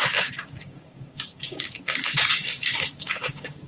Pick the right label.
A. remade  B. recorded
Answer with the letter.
A